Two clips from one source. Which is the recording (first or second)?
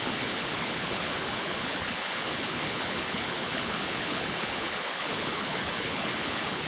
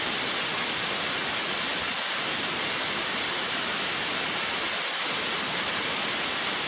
second